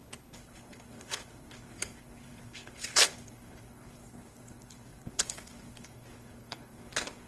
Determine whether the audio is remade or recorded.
remade